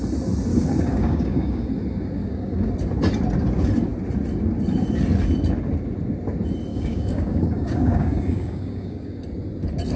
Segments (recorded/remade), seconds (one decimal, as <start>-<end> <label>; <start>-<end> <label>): 0.0-0.5 recorded; 0.5-1.7 remade; 1.7-2.2 recorded; 2.2-2.7 remade; 2.7-6.7 recorded; 6.7-9.2 remade; 9.2-10.0 recorded